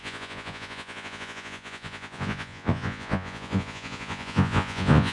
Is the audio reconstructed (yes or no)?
yes